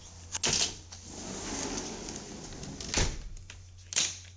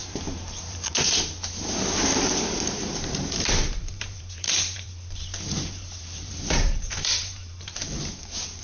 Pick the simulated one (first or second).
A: second